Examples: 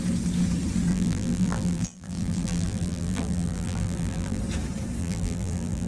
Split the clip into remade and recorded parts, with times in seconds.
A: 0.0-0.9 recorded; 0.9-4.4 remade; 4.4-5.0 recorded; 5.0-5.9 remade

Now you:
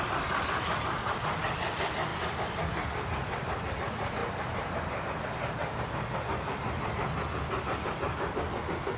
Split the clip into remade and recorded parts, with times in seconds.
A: 0.0-2.1 recorded; 2.1-3.7 remade; 3.7-4.2 recorded; 4.2-5.0 remade; 5.0-9.0 recorded

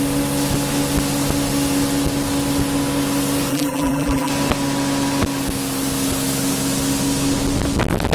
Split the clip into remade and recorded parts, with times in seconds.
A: 0.0-3.5 recorded; 3.5-4.3 remade; 4.3-8.1 recorded

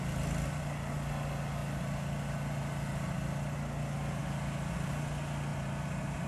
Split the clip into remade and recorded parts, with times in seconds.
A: 0.0-5.5 recorded; 5.5-6.3 remade